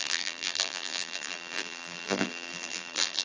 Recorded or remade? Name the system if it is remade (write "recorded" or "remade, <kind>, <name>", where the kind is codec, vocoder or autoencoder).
remade, vocoder, BigVGAN v2